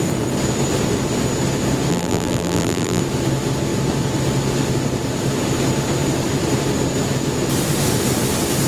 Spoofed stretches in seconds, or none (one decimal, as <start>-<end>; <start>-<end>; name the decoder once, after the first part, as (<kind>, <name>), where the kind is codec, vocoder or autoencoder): 1.9-3.0 (vocoder, BigVGAN v2)